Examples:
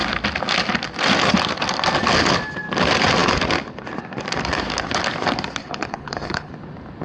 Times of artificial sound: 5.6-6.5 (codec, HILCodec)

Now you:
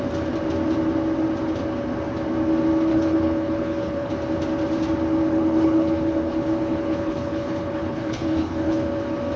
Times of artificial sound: 2.9-4.1 (codec, HILCodec); 5.3-9.0

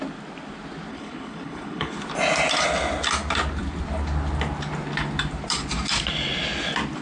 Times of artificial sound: 0.9-2.0 (codec, HILCodec)

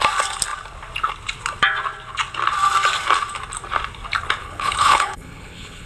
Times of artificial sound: 4.4-5.9 (codec, HILCodec)

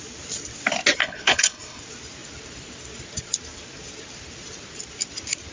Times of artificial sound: 1.0-1.8 (codec, HILCodec)

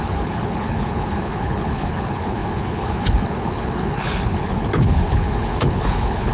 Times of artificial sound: 0.0-6.3 (codec, HILCodec)